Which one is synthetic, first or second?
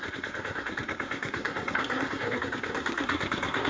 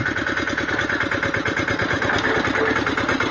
first